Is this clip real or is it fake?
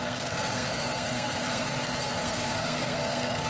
fake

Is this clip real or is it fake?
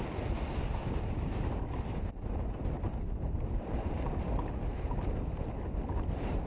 real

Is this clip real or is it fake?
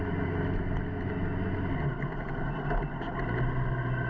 real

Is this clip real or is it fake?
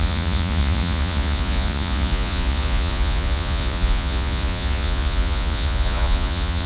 fake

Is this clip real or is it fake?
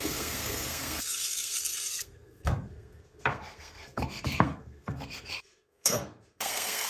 fake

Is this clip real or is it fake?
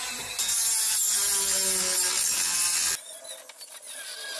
real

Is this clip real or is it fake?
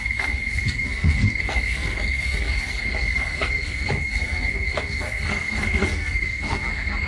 fake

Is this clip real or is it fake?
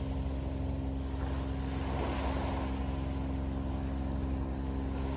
real